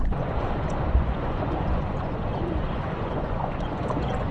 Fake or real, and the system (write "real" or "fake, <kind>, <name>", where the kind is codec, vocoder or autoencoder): fake, vocoder, Vocos